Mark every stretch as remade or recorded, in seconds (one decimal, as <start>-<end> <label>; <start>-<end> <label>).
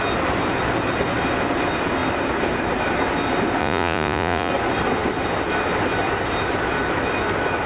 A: 0.0-3.6 recorded; 3.6-4.5 remade; 4.5-7.7 recorded